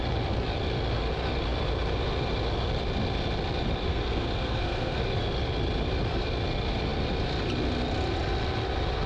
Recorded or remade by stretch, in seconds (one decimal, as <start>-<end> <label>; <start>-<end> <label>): 0.0-3.9 recorded; 3.9-5.0 remade; 5.0-9.1 recorded